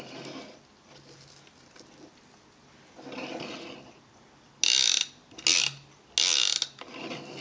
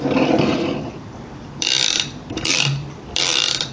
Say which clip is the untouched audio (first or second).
first